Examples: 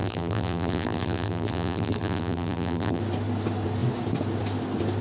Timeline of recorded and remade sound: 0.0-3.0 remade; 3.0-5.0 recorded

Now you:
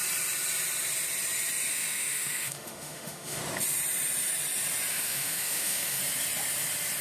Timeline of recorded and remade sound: 0.0-1.7 recorded; 1.7-3.4 remade; 3.4-4.9 recorded; 4.9-6.0 remade; 6.0-7.0 recorded